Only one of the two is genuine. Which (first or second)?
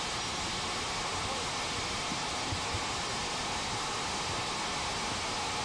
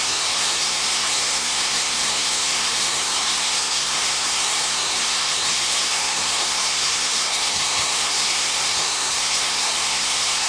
first